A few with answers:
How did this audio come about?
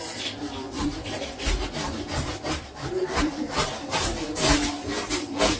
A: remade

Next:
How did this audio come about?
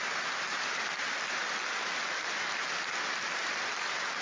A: recorded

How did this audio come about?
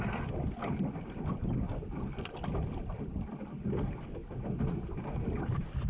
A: recorded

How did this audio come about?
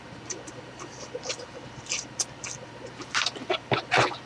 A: remade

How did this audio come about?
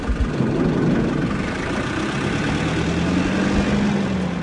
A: recorded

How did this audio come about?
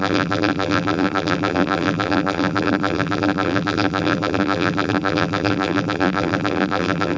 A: remade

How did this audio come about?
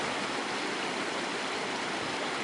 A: recorded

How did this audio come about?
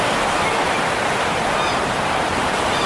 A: remade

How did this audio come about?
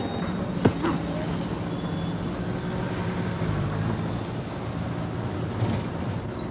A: recorded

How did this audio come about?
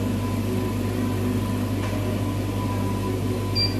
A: recorded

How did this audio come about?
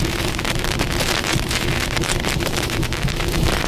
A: remade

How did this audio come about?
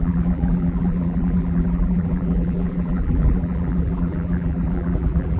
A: remade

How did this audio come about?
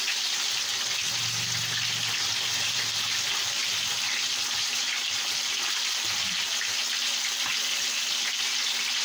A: recorded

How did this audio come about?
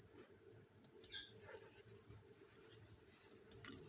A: recorded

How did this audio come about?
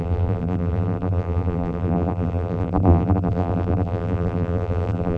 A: remade